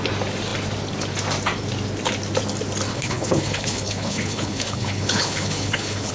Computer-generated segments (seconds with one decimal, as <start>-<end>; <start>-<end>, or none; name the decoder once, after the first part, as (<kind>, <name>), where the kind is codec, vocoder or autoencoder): 2.9-6.1 (codec, HILCodec)

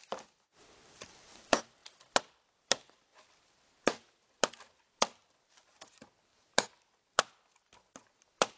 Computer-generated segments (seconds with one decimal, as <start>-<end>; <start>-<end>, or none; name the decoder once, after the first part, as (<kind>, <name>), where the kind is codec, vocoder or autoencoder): none

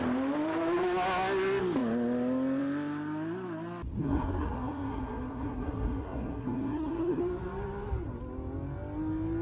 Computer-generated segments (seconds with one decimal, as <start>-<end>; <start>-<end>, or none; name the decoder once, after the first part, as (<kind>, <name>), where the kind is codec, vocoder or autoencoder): 4.0-7.2 (codec, SNAC)

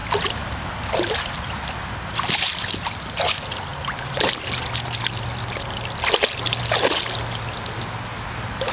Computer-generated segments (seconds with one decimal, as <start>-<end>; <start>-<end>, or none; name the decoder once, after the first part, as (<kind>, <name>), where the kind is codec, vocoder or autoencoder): none

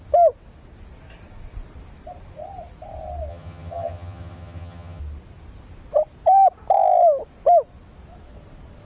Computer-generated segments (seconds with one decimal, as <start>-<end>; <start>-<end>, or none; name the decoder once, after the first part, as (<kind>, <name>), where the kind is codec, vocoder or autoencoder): 3.3-5.0 (vocoder, HiFi-GAN)

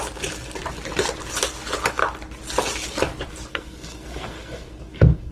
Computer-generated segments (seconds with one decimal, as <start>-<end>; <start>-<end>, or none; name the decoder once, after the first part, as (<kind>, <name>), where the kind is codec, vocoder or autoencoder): 3.5-5.3 (codec, SNAC)

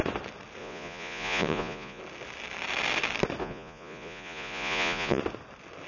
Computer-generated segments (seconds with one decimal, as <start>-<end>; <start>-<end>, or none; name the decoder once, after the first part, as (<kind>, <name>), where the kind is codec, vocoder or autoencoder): 0.6-2.0 (vocoder, Vocos); 3.4-5.2

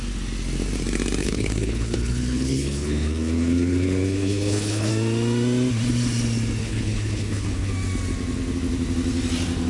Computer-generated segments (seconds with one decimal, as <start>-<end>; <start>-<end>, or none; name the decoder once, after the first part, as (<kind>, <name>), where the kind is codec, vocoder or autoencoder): 1.2-4.9 (codec, HILCodec); 6.6-7.7